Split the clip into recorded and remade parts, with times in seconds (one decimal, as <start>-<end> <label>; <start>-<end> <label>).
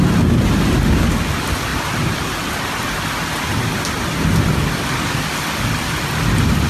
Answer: 0.0-6.7 recorded